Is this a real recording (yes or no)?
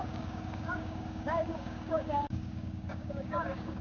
no